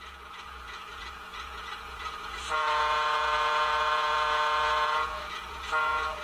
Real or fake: fake